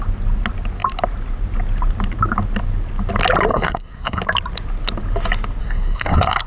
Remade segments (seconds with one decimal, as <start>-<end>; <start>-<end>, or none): 3.5-4.2; 5.6-6.5